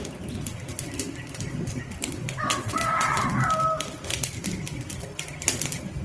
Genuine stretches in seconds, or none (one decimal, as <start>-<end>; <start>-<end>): 0.0-2.5; 3.2-6.0